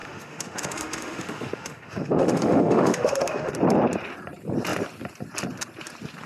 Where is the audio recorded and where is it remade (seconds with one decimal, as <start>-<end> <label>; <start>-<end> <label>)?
0.0-3.5 remade; 3.5-6.3 recorded